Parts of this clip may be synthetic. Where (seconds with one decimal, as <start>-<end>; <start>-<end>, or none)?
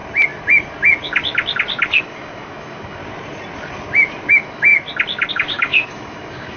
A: 2.0-3.0; 4.3-4.7; 5.3-6.6